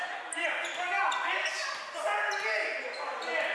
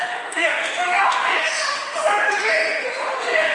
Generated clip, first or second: second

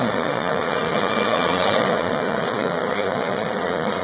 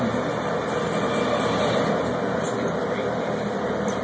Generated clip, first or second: first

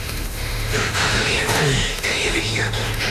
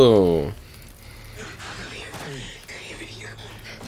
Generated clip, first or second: first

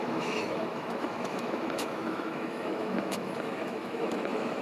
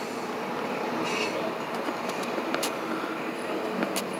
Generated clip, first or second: first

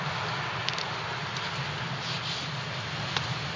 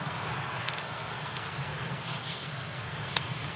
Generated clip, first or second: second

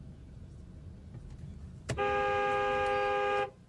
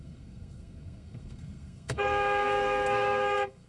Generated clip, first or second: second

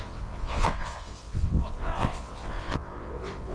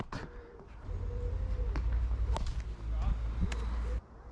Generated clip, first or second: first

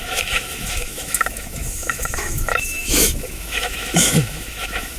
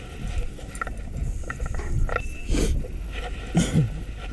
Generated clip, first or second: first